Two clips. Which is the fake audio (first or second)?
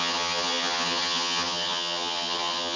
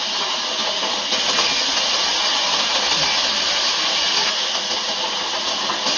first